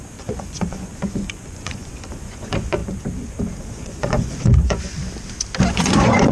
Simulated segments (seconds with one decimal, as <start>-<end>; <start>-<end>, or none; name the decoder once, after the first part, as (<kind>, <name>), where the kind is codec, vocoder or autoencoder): 0.0-2.8 (vocoder, Vocos); 3.6-5.0; 5.7-6.3

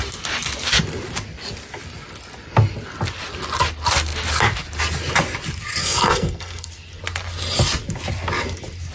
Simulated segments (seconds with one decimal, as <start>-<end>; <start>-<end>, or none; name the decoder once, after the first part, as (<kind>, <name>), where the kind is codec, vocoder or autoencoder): 5.8-6.7 (codec, SNAC)

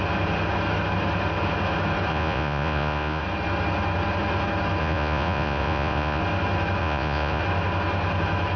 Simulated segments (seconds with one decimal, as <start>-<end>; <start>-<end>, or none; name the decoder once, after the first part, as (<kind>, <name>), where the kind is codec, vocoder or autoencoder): 2.1-3.2 (vocoder, Vocos); 4.8-6.2; 6.8-7.4

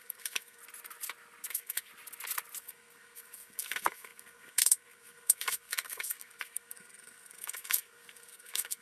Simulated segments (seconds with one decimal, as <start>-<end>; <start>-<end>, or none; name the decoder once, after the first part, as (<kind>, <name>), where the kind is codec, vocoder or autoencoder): 0.0-0.6 (codec, SNAC); 1.5-1.9; 2.6-8.8

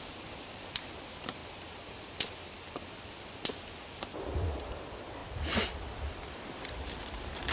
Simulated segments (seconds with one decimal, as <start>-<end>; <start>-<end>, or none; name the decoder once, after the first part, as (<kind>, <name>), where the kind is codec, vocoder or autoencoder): 0.0-1.4 (vocoder, BigVGAN v2); 4.6-5.2; 6.0-7.5

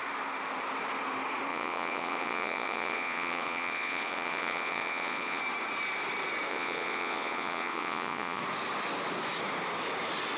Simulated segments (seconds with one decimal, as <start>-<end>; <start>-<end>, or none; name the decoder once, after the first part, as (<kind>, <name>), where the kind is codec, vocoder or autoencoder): 1.5-5.4 (vocoder, Vocos); 6.5-8.4